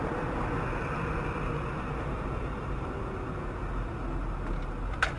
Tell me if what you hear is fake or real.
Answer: real